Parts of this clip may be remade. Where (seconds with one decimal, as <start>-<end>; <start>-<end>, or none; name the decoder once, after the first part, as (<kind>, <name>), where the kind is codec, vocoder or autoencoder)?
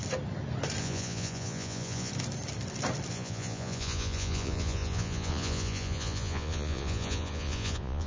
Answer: 0.8-2.1 (vocoder, Vocos); 3.1-8.1